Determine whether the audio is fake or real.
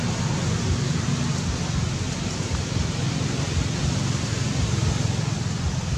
real